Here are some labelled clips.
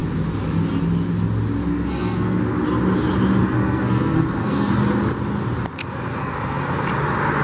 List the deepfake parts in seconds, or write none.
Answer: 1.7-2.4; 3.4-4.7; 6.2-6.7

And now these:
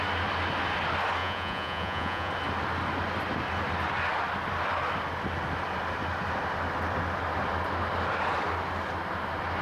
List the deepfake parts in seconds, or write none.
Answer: 1.2-2.3

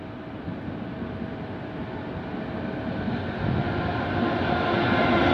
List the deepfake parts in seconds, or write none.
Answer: none

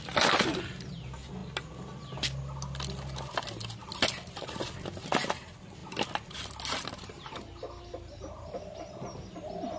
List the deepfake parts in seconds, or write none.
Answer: none

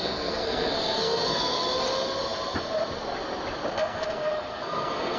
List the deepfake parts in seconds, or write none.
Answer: 0.0-1.6; 3.7-5.2

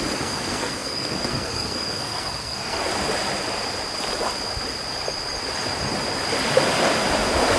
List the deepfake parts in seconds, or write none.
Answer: 0.0-2.9

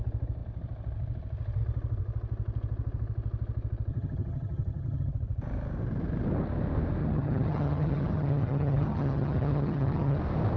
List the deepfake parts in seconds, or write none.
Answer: 3.9-5.1; 7.0-10.2